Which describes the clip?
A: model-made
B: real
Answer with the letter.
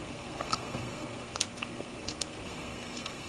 A